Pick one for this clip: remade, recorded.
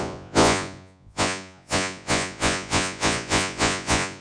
remade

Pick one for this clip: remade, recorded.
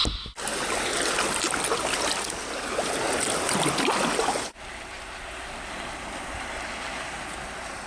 recorded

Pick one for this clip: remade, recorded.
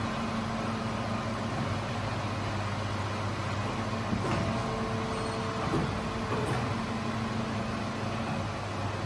recorded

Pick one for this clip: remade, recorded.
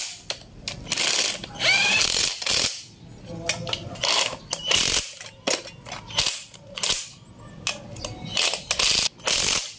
recorded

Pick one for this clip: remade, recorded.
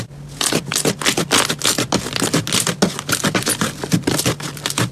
recorded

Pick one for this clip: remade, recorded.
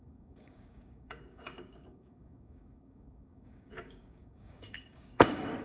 remade